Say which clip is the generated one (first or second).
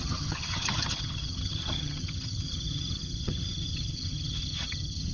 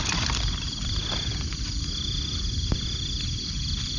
first